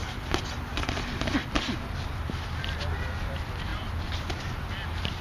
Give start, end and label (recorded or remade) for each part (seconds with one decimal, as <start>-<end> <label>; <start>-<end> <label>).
0.0-3.7 recorded; 3.7-4.2 remade; 4.2-5.2 recorded